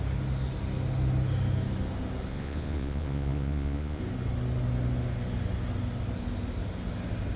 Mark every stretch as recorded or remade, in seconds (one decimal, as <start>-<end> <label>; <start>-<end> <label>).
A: 0.0-2.3 recorded; 2.3-4.0 remade; 4.0-7.4 recorded